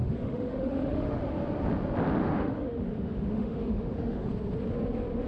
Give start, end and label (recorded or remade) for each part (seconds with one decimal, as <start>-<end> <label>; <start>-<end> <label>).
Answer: 0.0-1.2 remade; 1.2-2.2 recorded; 2.2-4.3 remade; 4.3-5.3 recorded

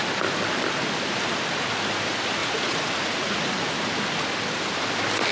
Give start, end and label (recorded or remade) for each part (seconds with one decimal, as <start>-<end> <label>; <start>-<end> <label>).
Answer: 0.0-2.4 recorded; 2.4-3.8 remade; 3.8-5.3 recorded

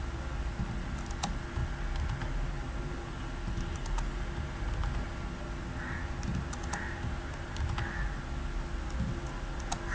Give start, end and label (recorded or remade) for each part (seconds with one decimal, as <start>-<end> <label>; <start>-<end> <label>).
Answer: 0.0-9.9 recorded

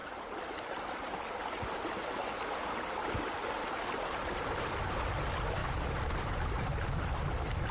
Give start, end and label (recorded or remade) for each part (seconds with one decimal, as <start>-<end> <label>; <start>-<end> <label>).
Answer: 0.0-1.2 remade; 1.2-2.6 recorded; 2.6-4.1 remade; 4.1-5.6 recorded; 5.6-7.3 remade; 7.3-7.7 recorded

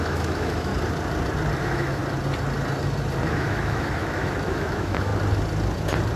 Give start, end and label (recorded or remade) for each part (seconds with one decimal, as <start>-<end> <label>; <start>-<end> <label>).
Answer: 0.0-0.7 remade; 0.7-1.6 recorded; 1.6-2.0 remade; 2.0-3.3 recorded; 3.3-5.1 remade; 5.1-6.2 recorded

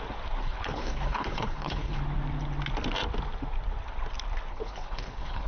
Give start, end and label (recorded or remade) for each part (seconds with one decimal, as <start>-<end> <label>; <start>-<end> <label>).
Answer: 0.0-0.4 recorded; 0.4-2.0 remade; 2.0-4.5 recorded; 4.5-5.5 remade

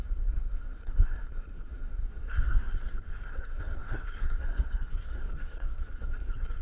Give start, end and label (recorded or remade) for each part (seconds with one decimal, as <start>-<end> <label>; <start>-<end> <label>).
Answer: 0.0-6.6 remade

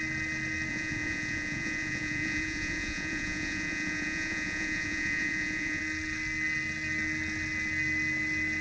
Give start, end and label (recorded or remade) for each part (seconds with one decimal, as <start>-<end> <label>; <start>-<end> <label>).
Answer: 0.0-0.7 recorded; 0.7-5.8 remade; 5.8-8.6 recorded